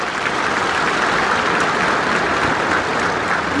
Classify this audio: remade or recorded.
recorded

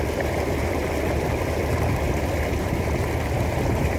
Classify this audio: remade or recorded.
recorded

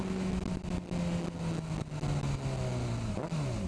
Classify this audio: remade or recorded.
recorded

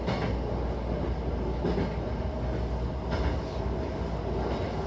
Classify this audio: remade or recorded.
recorded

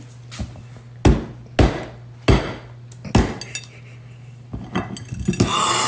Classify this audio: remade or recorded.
recorded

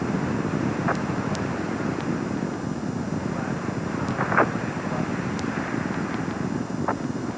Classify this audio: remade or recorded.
recorded